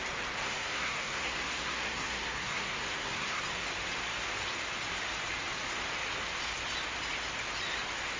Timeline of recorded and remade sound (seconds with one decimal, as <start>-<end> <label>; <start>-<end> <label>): 0.0-0.4 recorded; 0.4-3.4 remade; 3.4-8.2 recorded